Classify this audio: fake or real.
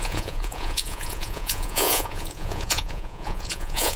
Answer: fake